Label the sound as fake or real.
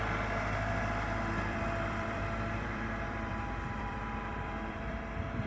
fake